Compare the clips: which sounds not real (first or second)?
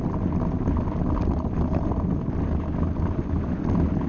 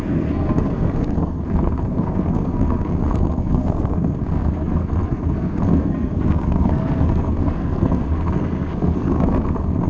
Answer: second